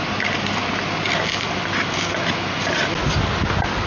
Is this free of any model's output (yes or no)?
yes